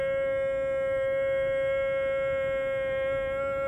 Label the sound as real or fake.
real